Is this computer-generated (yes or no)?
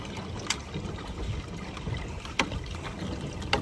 no